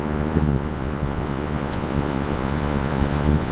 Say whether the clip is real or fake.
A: fake